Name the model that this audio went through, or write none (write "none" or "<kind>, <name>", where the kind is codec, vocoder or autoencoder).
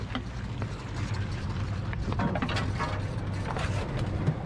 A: none